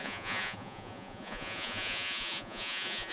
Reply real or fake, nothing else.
fake